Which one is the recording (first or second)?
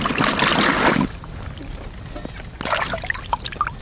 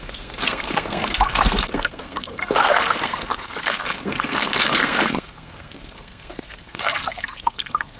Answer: first